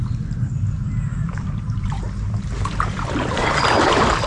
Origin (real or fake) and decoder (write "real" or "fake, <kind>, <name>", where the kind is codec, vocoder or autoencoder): real